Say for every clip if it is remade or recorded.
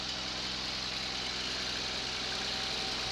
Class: recorded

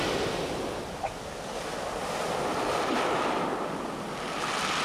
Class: recorded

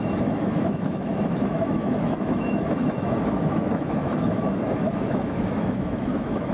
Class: remade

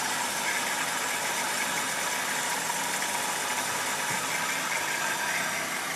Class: recorded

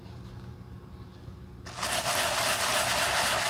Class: recorded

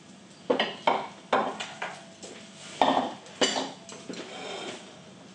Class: recorded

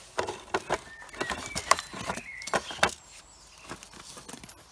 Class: recorded